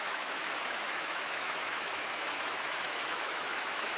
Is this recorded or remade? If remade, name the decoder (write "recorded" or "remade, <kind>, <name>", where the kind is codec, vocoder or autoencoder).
remade, autoencoder, DAC-VAE